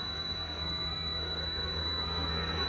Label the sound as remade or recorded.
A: remade